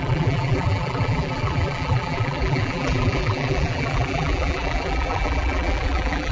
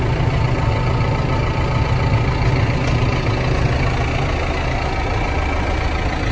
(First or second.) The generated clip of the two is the first